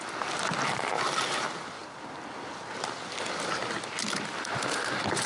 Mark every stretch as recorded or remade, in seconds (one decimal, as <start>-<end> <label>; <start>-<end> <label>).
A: 0.0-5.3 recorded